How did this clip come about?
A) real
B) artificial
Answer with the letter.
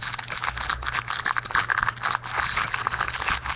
A